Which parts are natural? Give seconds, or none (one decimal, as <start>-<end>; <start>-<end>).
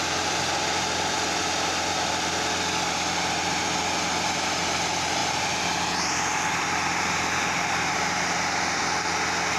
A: 0.0-5.2; 8.8-9.6